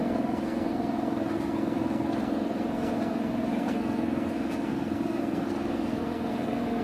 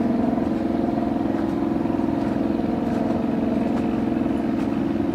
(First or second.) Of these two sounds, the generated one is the first